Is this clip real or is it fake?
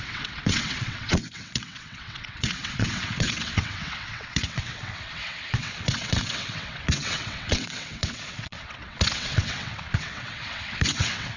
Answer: fake